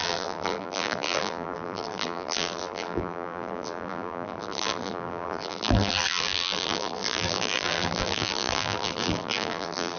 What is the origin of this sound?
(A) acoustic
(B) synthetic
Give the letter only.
B